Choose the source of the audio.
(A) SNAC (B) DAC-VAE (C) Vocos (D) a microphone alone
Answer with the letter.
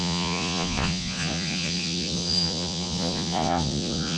C